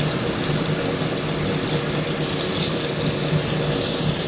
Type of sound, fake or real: real